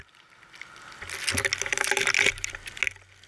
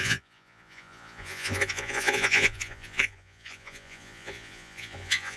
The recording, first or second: first